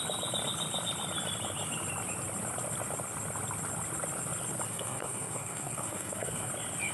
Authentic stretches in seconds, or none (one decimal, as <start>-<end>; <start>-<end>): 0.0-4.7; 6.5-6.9